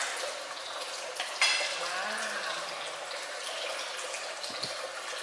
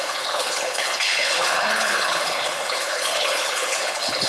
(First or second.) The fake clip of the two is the second